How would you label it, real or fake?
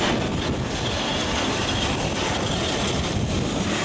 real